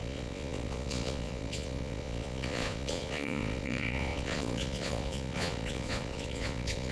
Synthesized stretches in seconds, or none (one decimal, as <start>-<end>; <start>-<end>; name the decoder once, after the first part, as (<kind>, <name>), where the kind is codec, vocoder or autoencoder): 0.0-6.9 (vocoder, Vocos)